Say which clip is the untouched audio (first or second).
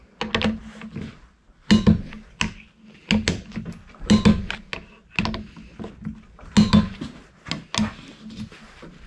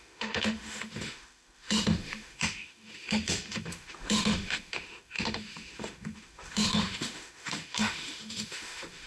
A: first